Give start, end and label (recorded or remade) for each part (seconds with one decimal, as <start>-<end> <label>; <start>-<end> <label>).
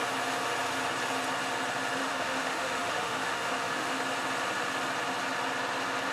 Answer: 0.0-2.0 recorded; 2.0-4.0 remade; 4.0-6.1 recorded